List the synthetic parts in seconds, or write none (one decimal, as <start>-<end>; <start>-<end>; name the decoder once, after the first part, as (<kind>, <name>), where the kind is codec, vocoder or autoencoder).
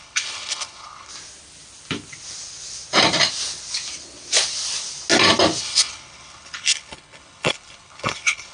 0.0-1.1 (codec, HILCodec); 5.6-8.5